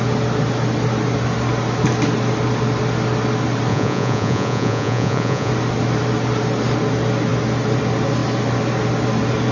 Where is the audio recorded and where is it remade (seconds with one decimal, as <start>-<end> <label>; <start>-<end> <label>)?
0.0-3.7 recorded; 3.7-5.5 remade; 5.5-9.5 recorded